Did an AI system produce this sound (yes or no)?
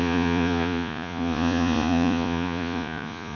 yes